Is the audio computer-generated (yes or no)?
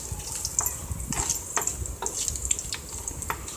no